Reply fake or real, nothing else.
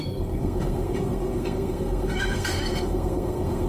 fake